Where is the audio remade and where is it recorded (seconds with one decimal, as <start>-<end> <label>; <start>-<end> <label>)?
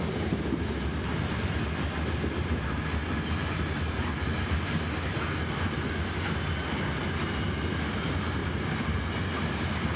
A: 0.0-10.0 recorded